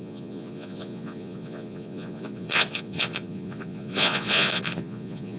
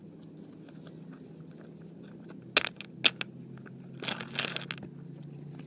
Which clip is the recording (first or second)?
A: second